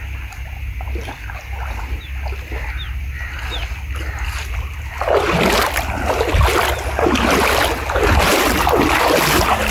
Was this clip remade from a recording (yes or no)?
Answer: no